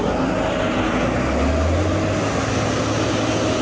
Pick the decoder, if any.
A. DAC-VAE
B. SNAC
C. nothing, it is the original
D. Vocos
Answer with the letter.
C